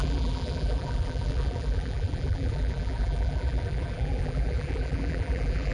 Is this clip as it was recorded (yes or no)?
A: no